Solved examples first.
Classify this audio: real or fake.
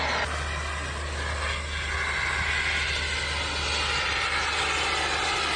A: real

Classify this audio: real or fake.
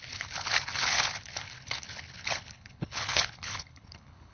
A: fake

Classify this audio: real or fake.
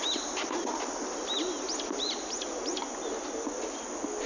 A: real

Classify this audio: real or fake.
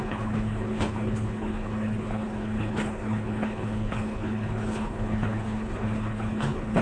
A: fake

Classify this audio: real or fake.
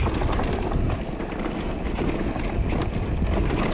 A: real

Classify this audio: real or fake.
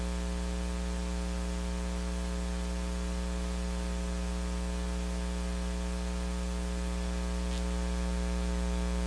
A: real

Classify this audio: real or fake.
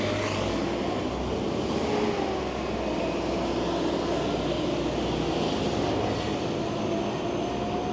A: real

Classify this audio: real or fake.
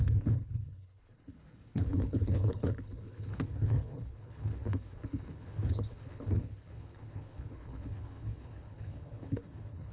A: fake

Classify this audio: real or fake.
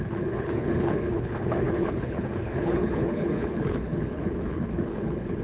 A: fake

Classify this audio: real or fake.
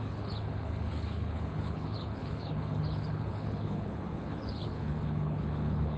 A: fake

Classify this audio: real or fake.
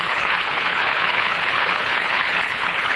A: fake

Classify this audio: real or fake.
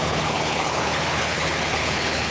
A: fake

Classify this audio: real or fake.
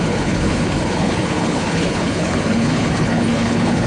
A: fake